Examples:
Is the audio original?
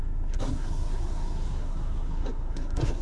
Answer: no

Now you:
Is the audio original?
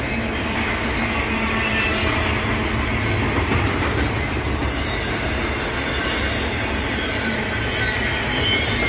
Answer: yes